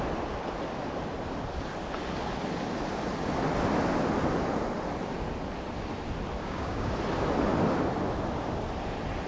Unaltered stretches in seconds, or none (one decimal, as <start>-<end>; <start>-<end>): 0.0-6.4; 6.9-9.3

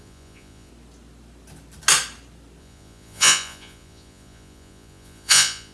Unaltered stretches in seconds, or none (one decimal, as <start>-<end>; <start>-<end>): 0.7-2.6

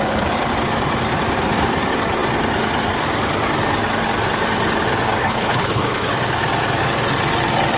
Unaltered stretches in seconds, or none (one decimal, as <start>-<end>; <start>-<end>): 0.0-5.2; 6.1-7.8

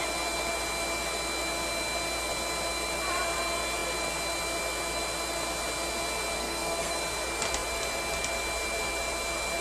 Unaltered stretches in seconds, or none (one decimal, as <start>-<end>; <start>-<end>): 0.0-6.4; 7.0-9.6

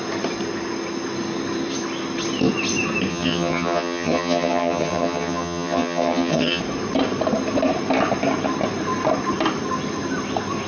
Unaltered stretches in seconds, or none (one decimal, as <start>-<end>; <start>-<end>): 0.0-3.1; 6.6-10.7

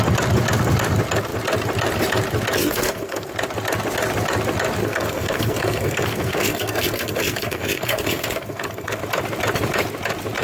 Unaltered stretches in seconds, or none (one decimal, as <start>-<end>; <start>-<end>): 0.0-2.6; 3.3-4.8; 9.0-10.4

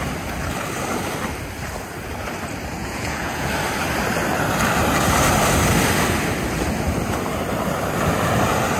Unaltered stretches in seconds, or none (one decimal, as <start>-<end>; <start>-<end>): 0.0-2.8; 3.5-8.8